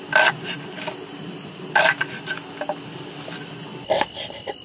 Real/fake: real